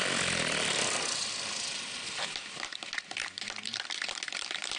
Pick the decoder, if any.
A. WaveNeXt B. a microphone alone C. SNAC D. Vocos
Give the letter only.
B